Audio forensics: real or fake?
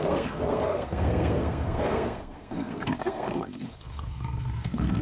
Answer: fake